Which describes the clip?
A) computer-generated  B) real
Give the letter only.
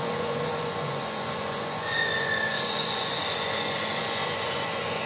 A